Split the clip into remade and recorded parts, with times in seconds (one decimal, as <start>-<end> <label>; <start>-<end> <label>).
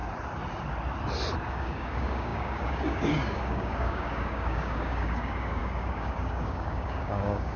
0.0-1.5 recorded; 1.5-7.6 remade